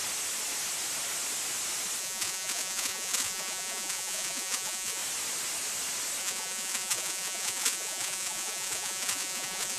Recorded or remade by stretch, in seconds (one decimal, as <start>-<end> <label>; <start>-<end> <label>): 0.0-2.0 recorded; 2.0-5.0 remade; 5.0-6.2 recorded; 6.2-9.8 remade

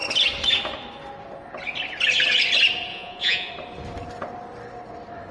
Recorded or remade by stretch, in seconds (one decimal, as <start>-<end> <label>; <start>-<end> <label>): 0.0-2.9 recorded; 2.9-3.5 remade; 3.5-5.3 recorded

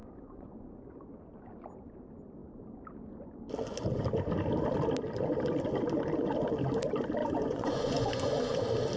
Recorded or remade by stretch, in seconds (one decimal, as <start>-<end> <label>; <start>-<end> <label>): 0.0-1.1 remade; 1.1-7.2 recorded; 7.2-8.6 remade; 8.6-9.0 recorded

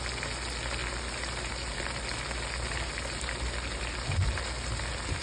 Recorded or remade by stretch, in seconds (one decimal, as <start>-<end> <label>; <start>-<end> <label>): 0.0-5.2 recorded